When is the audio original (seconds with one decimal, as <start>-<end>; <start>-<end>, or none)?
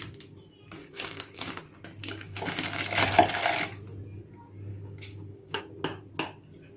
0.0-0.8; 1.6-2.0; 2.8-4.7; 5.6-6.8